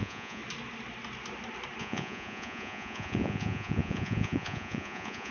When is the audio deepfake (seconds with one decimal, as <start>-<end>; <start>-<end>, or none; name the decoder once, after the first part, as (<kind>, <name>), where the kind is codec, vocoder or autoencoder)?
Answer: 0.0-0.4 (vocoder, Vocos); 1.8-5.3